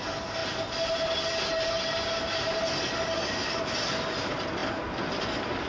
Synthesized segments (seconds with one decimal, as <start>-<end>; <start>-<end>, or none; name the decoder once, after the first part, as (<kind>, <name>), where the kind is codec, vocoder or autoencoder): none